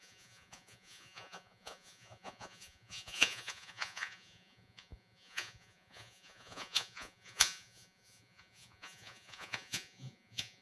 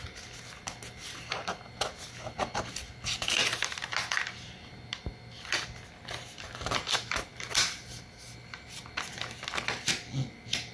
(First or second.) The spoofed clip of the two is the first